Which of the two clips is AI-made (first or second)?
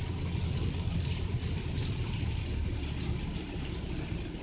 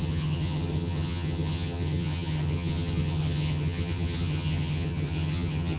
second